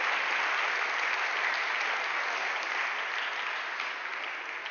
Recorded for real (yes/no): yes